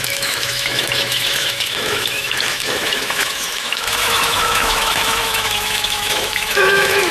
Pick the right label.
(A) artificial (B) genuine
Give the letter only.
A